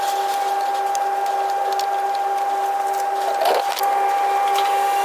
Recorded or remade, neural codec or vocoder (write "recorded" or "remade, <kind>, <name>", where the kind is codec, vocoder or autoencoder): recorded